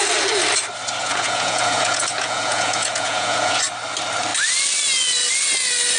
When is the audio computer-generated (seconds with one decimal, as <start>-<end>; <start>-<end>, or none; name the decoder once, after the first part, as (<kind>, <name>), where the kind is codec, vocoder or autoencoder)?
1.0-3.6 (vocoder, Vocos)